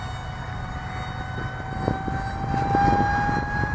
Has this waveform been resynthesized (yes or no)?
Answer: no